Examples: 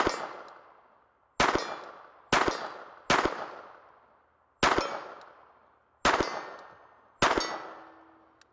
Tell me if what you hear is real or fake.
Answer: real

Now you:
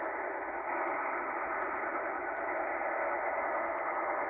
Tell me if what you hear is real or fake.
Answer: real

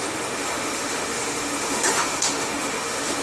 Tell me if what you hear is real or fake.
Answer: fake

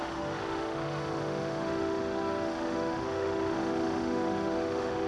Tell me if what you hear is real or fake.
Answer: fake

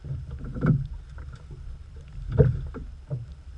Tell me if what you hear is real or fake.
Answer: real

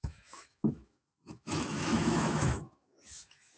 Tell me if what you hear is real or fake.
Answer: fake